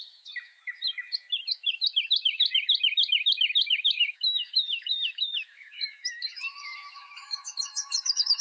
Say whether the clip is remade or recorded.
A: remade